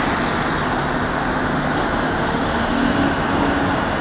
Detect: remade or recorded recorded